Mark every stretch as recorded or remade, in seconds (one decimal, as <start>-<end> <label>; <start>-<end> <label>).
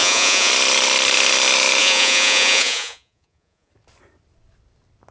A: 0.0-0.5 remade; 0.5-1.8 recorded; 1.8-3.7 remade; 3.7-5.1 recorded